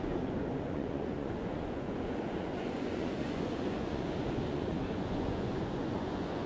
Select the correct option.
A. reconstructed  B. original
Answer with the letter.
A